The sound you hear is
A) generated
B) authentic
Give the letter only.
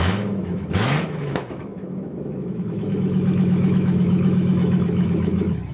A